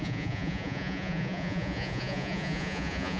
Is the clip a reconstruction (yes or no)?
yes